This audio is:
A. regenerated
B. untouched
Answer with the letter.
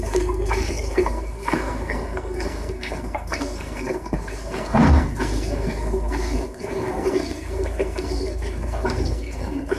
A